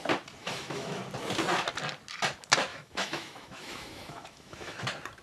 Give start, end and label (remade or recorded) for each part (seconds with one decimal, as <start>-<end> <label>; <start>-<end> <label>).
0.0-0.4 recorded; 0.4-1.0 remade; 1.0-2.7 recorded; 2.7-4.8 remade; 4.8-5.2 recorded